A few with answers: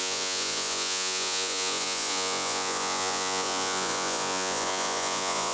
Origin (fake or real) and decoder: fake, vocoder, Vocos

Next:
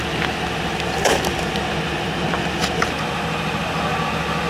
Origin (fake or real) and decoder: real